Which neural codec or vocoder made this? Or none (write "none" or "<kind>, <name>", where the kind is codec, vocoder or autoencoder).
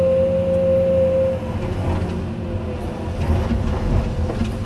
none